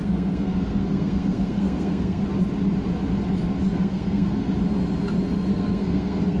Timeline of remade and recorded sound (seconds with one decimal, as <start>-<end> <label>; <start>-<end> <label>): 0.0-2.2 remade; 2.2-3.7 recorded; 3.7-4.5 remade; 4.5-5.5 recorded; 5.5-6.4 remade